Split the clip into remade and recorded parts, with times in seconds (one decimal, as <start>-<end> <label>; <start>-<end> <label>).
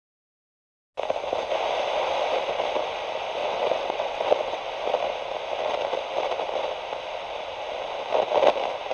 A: 0.0-3.4 recorded; 3.4-4.7 remade; 4.7-8.9 recorded